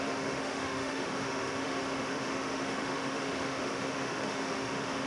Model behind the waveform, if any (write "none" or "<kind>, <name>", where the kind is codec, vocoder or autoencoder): autoencoder, DAC-VAE